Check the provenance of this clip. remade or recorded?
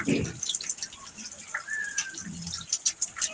recorded